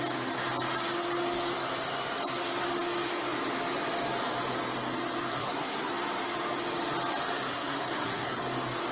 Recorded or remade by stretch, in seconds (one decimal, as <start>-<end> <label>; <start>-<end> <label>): 0.0-5.3 recorded; 5.3-5.9 remade; 5.9-7.5 recorded; 7.5-8.4 remade; 8.4-8.9 recorded